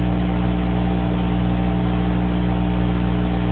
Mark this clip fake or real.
real